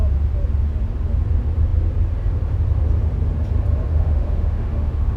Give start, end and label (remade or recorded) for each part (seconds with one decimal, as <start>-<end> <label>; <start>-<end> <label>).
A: 0.0-3.9 recorded; 3.9-5.2 remade